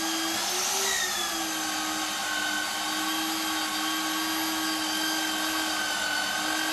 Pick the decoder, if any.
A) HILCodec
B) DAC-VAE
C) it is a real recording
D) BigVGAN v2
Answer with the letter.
C